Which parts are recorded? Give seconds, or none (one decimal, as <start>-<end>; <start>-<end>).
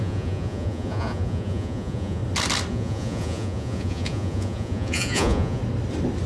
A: 2.2-2.7; 5.6-6.3